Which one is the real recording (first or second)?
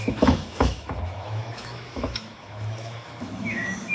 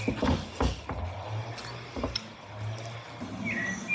second